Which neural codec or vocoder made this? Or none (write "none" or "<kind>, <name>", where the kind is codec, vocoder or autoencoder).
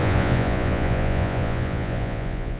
vocoder, Vocos